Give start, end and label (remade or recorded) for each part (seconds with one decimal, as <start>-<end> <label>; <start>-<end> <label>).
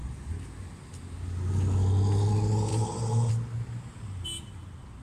0.0-2.7 recorded; 2.7-3.3 remade; 3.3-5.0 recorded